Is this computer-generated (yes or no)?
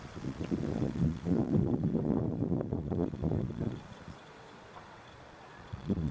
yes